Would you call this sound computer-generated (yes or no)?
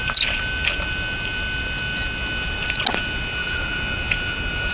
no